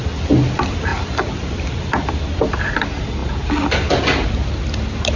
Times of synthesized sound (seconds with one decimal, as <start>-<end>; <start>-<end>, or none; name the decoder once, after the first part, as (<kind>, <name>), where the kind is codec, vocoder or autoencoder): none

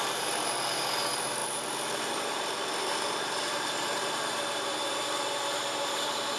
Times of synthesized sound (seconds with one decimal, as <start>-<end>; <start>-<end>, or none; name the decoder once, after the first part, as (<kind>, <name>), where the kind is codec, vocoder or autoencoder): 0.0-6.4 (vocoder, BigVGAN v2)